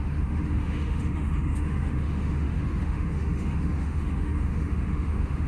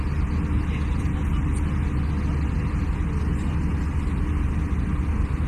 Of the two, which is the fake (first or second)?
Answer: first